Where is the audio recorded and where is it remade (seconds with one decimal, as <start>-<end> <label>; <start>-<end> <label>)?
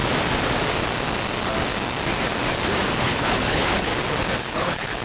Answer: 0.0-3.0 recorded; 3.0-3.9 remade; 3.9-4.4 recorded; 4.4-5.0 remade